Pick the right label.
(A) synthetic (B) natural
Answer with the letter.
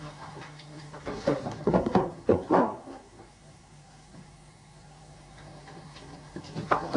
A